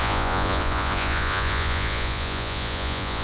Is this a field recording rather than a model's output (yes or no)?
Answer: no